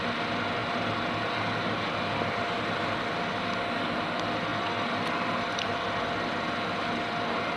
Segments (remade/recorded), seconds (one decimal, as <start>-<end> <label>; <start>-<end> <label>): 0.0-7.6 recorded